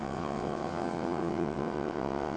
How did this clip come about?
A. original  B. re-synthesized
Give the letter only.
B